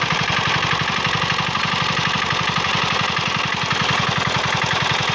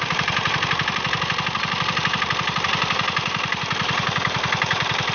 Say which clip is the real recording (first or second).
first